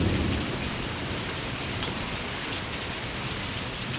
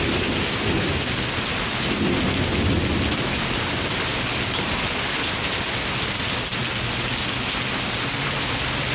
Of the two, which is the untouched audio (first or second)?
second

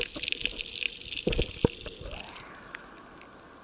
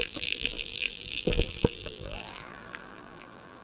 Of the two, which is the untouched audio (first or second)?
first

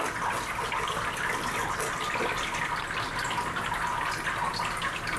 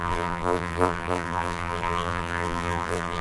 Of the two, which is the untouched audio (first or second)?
first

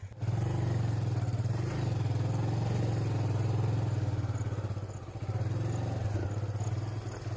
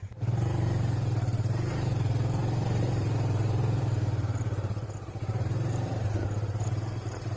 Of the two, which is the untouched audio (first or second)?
first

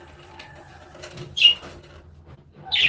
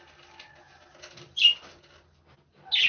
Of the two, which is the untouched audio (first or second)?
second